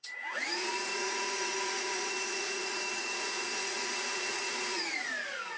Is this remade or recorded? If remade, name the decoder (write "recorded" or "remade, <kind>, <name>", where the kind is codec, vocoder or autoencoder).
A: remade, vocoder, Vocos